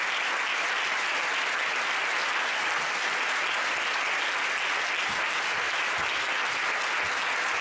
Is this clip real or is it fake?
real